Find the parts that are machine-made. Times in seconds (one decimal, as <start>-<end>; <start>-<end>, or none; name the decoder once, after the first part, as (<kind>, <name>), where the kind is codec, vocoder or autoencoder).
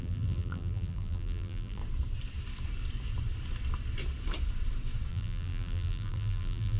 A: 0.0-1.8 (vocoder, BigVGAN v2); 5.1-6.8